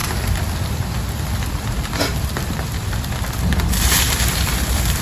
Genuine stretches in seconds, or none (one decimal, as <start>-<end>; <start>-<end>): none

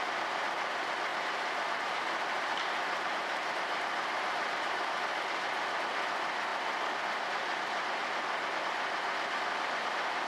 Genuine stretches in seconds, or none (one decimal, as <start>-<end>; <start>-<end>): 0.0-1.1; 5.0-10.3